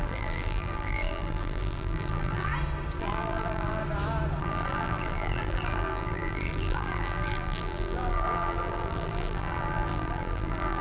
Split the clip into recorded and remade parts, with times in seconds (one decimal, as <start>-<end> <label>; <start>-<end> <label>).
0.0-2.5 remade; 2.5-3.0 recorded; 3.0-3.8 remade; 3.8-4.4 recorded; 4.4-10.8 remade